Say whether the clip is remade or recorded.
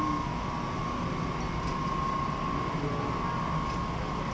recorded